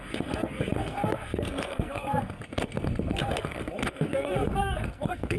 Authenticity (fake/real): fake